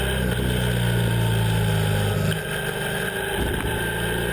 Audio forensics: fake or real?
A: real